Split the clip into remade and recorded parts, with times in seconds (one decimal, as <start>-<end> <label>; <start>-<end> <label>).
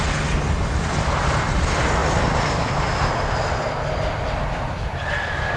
0.0-5.6 recorded